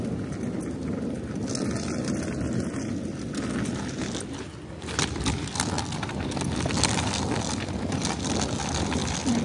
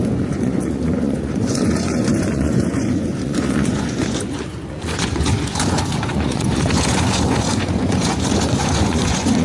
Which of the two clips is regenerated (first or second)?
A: second